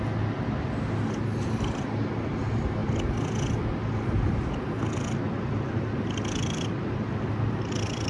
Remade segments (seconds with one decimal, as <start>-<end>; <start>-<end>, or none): none